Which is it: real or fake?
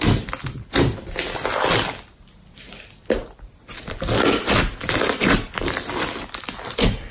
real